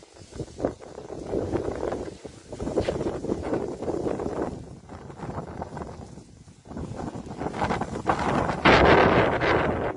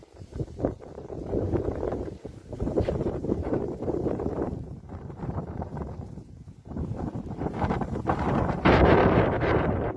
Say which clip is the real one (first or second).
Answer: first